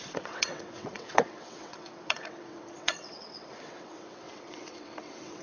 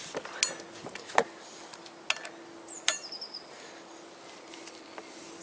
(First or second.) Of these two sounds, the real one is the second